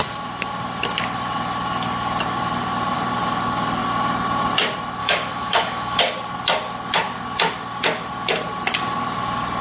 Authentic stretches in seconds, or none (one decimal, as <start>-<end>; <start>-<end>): 0.0-5.0; 6.0-9.6